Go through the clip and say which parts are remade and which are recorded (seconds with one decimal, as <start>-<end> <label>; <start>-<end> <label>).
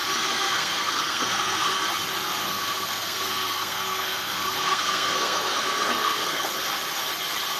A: 0.0-1.7 remade; 1.7-2.4 recorded; 2.4-6.5 remade; 6.5-7.6 recorded